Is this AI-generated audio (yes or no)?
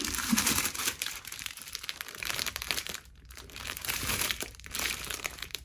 yes